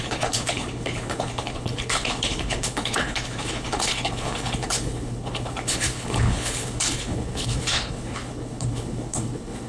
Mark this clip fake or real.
fake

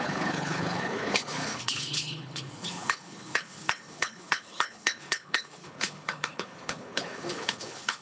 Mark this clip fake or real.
fake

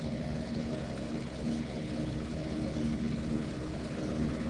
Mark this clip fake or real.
fake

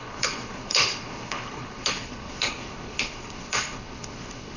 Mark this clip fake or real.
fake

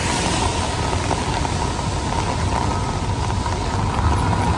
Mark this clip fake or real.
real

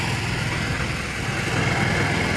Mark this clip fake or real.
real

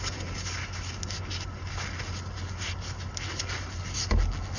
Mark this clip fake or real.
real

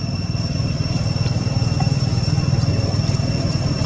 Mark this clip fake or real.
real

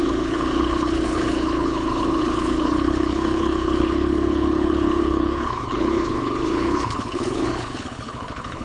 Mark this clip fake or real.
fake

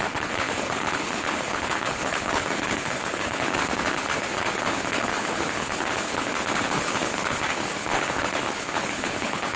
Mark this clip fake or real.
fake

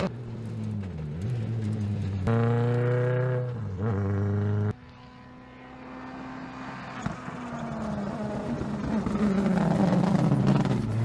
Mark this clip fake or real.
real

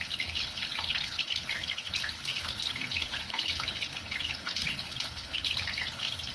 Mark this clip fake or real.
fake